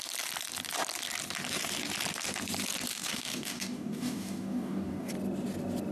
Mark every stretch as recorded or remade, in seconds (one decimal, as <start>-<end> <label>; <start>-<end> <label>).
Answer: 0.0-2.9 recorded; 2.9-5.1 remade; 5.1-5.9 recorded